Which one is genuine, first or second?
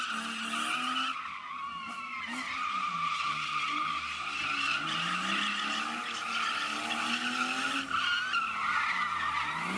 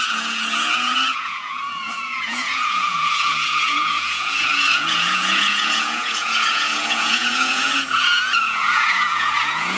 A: first